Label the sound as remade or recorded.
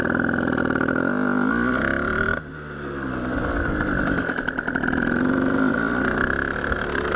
recorded